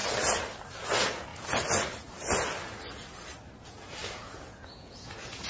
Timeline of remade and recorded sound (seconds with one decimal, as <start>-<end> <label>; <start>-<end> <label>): 0.0-0.9 recorded; 0.9-1.3 remade; 1.3-3.6 recorded; 3.6-5.5 remade